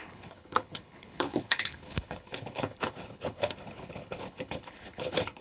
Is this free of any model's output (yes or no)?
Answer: no